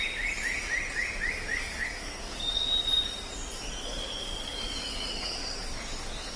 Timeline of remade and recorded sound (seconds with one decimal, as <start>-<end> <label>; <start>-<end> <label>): 0.0-1.5 recorded; 1.5-2.5 remade; 2.5-4.3 recorded; 4.3-5.6 remade; 5.6-6.4 recorded